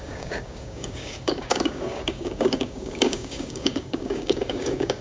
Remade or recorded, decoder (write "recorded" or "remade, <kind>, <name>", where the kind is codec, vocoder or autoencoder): remade, codec, DAC